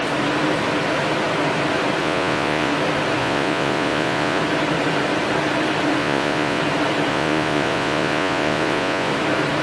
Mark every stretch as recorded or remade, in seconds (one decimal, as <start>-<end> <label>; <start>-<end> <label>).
0.0-2.0 recorded; 2.0-2.7 remade; 2.7-3.2 recorded; 3.2-4.4 remade; 4.4-6.0 recorded; 6.0-6.6 remade; 6.6-7.1 recorded; 7.1-9.1 remade; 9.1-9.6 recorded